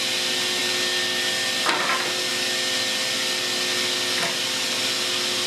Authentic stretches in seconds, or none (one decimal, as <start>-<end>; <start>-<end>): 0.0-5.5